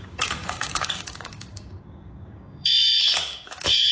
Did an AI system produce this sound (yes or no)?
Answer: yes